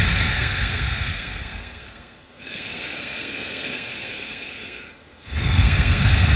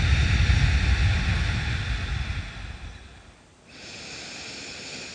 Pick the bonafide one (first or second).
second